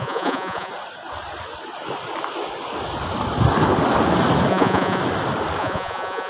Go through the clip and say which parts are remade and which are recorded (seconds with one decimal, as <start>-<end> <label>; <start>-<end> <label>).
0.0-0.7 remade; 0.7-4.5 recorded; 4.5-5.0 remade; 5.0-5.6 recorded; 5.6-6.3 remade